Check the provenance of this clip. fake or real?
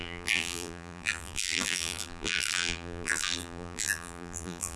fake